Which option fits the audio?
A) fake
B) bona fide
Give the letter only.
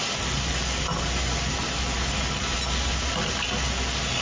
B